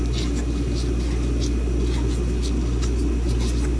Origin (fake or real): real